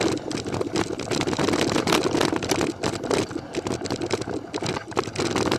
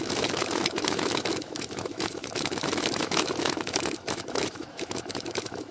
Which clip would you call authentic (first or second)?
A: first